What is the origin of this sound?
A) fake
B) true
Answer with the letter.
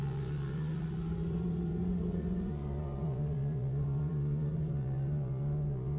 A